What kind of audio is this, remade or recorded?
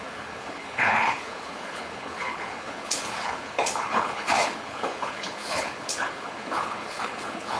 remade